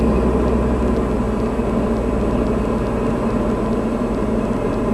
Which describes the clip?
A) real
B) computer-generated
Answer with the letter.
A